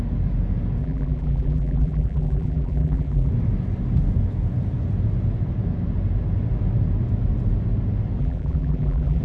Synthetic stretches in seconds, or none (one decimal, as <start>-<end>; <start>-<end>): 0.8-3.3; 8.2-9.2